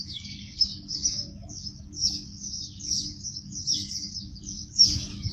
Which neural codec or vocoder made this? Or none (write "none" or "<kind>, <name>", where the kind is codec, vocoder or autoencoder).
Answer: codec, DAC